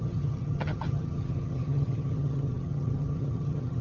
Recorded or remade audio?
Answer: remade